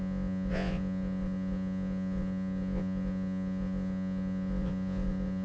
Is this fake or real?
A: fake